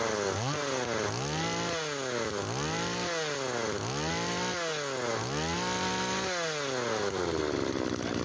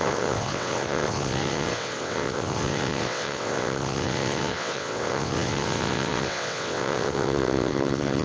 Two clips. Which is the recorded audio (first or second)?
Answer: first